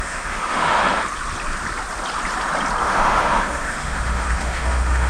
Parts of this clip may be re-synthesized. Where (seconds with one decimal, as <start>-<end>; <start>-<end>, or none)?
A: 0.0-0.8; 2.8-5.1